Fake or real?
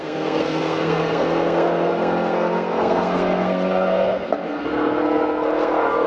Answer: fake